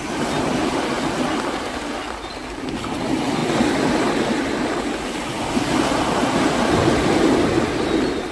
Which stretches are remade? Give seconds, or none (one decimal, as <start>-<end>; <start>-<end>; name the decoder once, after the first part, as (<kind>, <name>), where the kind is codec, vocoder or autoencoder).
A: none